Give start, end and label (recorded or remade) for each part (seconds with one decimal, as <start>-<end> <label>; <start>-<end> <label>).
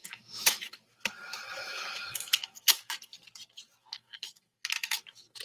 0.0-3.0 remade; 3.0-3.8 recorded; 3.8-5.4 remade